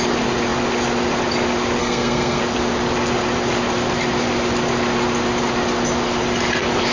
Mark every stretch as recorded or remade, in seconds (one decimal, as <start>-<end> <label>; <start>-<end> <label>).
0.0-1.8 recorded; 1.8-2.4 remade; 2.4-6.9 recorded